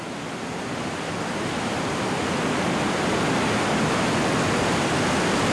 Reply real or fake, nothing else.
real